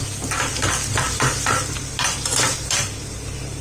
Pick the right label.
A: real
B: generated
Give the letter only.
A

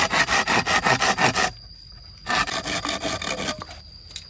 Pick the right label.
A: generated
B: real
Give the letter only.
B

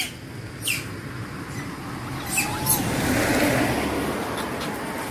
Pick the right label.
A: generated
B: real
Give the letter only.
B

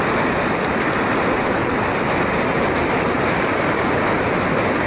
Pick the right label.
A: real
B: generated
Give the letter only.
A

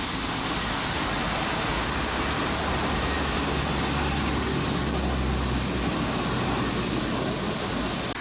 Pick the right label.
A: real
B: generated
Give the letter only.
A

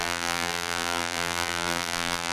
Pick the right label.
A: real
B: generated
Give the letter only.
B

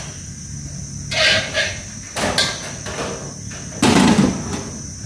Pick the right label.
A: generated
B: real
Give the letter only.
B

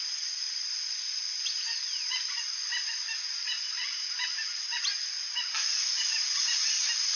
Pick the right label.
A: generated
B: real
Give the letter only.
B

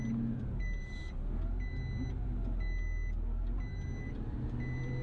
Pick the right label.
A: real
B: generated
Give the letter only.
A